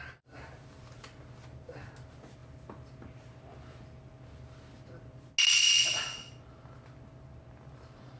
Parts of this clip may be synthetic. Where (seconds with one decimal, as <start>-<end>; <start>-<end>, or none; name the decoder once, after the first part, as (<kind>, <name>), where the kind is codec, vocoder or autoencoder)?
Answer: none